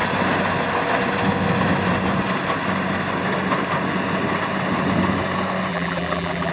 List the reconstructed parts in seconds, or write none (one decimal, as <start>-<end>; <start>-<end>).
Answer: 5.7-6.5